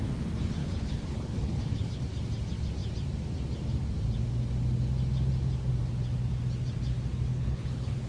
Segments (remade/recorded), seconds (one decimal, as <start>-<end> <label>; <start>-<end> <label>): 0.0-0.6 recorded; 0.6-2.0 remade; 2.0-7.3 recorded; 7.3-8.1 remade